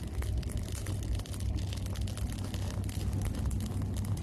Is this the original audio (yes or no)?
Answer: yes